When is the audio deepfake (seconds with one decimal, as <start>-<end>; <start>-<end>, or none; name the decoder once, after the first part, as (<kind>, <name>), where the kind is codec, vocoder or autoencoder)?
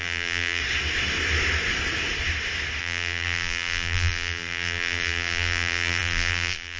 0.0-0.6 (vocoder, BigVGAN v2); 2.8-6.8